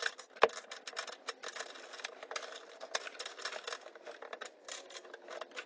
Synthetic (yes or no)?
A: no